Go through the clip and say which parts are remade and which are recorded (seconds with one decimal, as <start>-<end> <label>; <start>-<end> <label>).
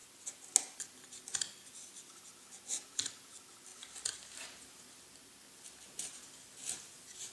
0.0-7.3 recorded